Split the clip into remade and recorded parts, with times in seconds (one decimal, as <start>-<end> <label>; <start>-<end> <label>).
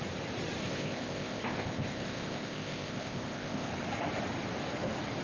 0.0-0.6 recorded; 0.6-3.7 remade; 3.7-5.2 recorded